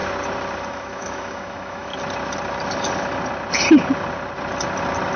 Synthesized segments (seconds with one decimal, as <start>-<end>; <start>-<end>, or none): 0.7-1.9